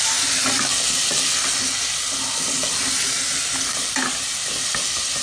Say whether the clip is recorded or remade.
recorded